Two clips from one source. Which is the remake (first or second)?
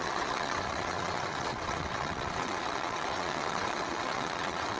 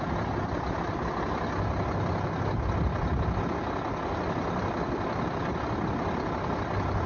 first